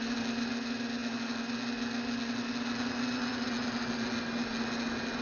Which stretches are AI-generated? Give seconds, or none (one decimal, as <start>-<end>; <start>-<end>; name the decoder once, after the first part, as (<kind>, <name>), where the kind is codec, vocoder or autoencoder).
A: none